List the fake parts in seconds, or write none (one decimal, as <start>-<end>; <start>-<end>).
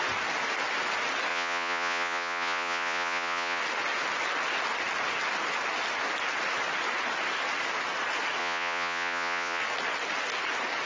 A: 1.3-3.6; 8.4-9.6